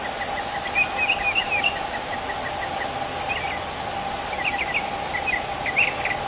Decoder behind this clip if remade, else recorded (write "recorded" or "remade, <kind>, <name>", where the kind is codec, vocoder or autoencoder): recorded